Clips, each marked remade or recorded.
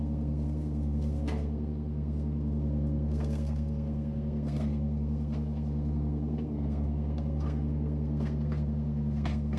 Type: remade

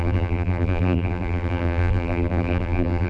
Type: remade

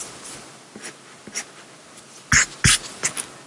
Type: recorded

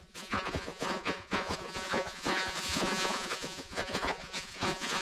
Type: remade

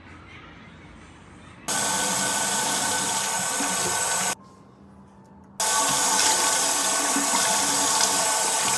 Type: recorded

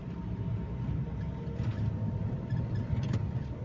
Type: recorded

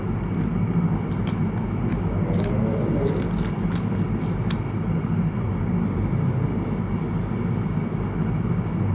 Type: recorded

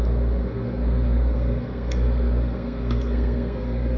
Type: remade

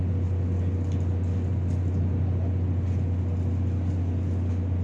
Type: recorded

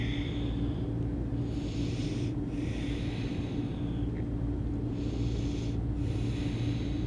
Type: recorded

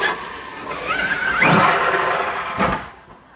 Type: recorded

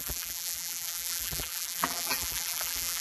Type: remade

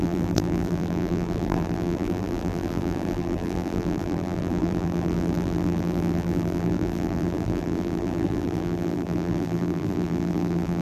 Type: remade